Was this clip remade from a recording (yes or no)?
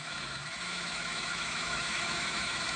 yes